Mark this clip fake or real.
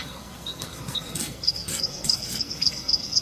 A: fake